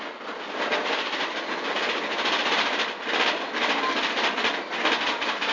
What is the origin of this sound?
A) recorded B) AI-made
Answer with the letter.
A